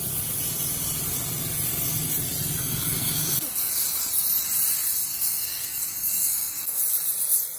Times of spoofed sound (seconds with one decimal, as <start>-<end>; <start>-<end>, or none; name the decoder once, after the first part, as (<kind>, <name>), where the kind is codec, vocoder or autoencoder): 2.6-4.1 (codec, SNAC); 5.1-6.8